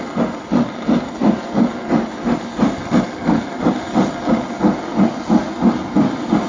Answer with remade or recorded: recorded